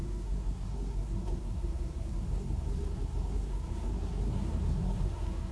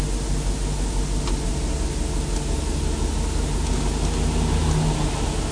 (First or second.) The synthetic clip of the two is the first